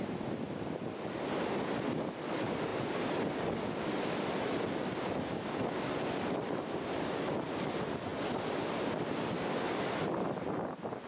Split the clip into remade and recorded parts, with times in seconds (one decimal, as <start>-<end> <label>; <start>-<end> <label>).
0.0-11.1 recorded